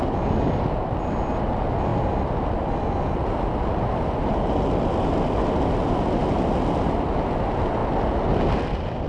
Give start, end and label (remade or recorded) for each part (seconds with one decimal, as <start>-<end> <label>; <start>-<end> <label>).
0.0-9.1 recorded